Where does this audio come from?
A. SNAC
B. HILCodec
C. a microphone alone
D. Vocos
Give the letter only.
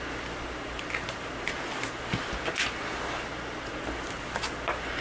C